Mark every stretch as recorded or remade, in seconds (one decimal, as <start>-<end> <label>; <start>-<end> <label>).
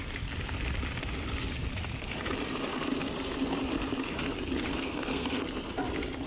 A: 0.0-4.7 recorded; 4.7-5.4 remade; 5.4-6.3 recorded